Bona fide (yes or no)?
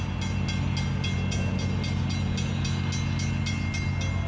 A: yes